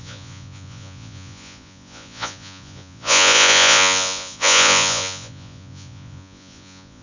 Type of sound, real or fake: fake